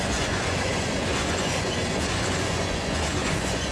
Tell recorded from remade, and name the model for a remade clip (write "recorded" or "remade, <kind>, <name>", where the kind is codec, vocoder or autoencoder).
remade, vocoder, Vocos